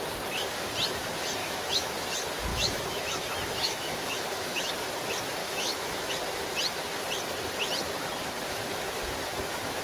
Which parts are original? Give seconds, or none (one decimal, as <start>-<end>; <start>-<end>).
0.0-1.4; 1.9-2.5; 4.7-5.4; 6.1-9.8

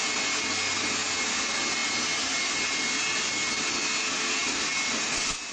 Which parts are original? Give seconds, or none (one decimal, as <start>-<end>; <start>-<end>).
0.0-5.5

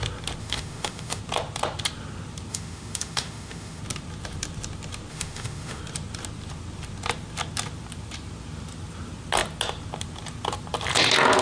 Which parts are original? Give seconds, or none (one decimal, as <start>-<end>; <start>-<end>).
0.0-0.4; 1.2-2.5; 3.8-5.1; 5.8-11.4

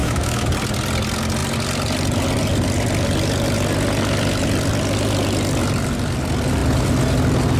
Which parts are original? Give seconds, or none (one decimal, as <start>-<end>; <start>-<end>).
0.5-7.6

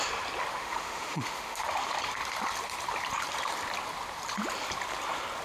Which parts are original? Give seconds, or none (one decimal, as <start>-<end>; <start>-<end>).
0.0-0.5; 1.6-5.4

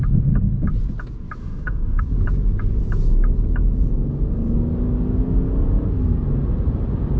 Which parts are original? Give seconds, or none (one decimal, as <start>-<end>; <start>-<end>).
0.0-1.4; 2.0-7.2

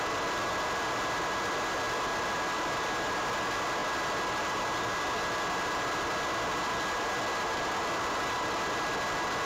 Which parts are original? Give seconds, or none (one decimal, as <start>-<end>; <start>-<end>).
0.0-9.5

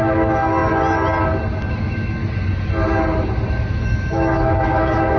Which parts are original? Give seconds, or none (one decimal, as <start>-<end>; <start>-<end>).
0.6-1.7; 2.2-3.5